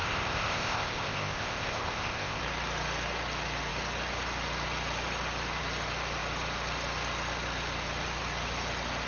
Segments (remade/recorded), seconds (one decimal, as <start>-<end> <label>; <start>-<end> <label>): 0.0-2.4 remade; 2.4-9.1 recorded

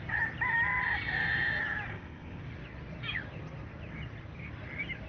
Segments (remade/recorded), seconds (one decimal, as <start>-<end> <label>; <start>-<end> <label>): 0.0-1.9 recorded; 1.9-2.4 remade; 2.4-5.1 recorded

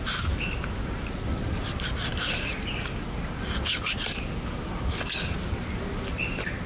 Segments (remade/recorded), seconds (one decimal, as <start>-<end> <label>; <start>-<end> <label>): 0.0-6.7 recorded

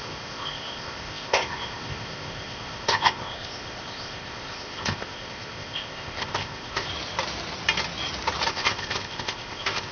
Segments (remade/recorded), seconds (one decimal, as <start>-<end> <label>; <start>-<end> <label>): 0.0-6.9 remade; 6.9-8.5 recorded; 8.5-9.9 remade

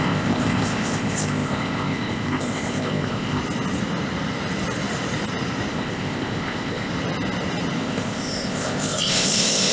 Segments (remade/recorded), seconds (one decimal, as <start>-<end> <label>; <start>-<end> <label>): 0.0-3.4 remade; 3.4-5.7 recorded; 5.7-6.9 remade; 6.9-7.8 recorded; 7.8-9.7 remade

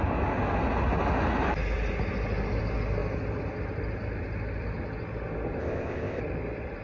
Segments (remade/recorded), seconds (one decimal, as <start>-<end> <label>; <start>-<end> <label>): 0.0-5.6 recorded; 5.6-6.2 remade; 6.2-6.8 recorded

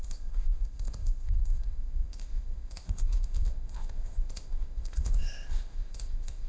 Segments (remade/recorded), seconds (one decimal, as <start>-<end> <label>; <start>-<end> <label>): 0.0-6.5 remade

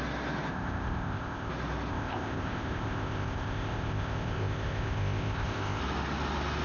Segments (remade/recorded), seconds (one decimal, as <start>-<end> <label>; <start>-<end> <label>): 0.0-0.5 recorded; 0.5-1.5 remade; 1.5-1.9 recorded; 1.9-5.8 remade; 5.8-6.6 recorded